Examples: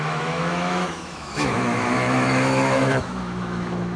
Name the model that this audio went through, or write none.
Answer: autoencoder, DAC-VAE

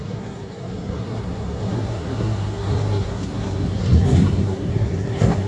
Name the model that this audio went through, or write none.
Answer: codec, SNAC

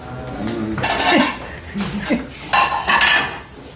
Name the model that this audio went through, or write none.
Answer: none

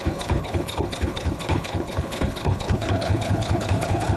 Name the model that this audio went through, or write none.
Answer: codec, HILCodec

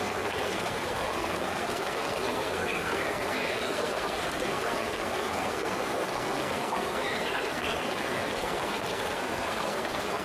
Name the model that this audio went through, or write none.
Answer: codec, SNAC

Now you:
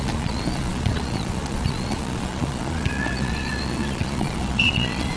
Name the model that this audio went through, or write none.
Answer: vocoder, Vocos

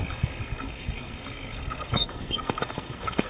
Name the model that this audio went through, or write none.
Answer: codec, SNAC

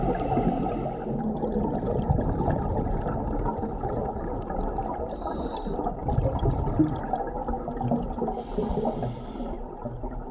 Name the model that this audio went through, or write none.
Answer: none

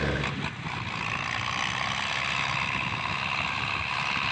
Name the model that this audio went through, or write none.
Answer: none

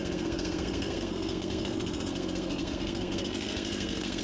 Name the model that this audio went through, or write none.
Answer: codec, SNAC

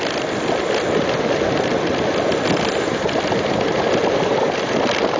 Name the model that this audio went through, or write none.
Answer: none